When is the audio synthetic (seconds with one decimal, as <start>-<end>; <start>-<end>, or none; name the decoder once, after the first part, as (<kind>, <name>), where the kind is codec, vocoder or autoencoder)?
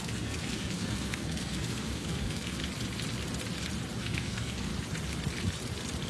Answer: 0.0-2.6 (codec, SNAC); 4.0-4.7